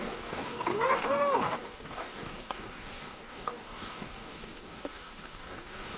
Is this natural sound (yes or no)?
no